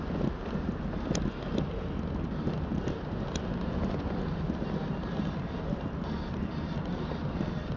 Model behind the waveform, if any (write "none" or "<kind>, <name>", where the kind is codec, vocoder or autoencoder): none